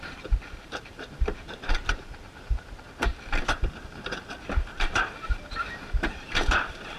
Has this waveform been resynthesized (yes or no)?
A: yes